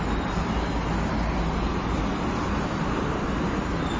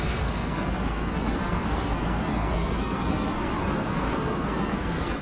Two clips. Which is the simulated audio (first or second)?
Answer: second